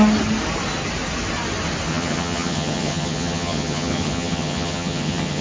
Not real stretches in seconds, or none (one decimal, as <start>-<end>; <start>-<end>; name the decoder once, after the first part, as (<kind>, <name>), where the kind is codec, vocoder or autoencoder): 1.9-5.4 (vocoder, HiFi-GAN)